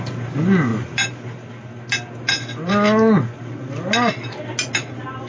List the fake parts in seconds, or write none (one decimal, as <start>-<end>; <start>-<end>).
none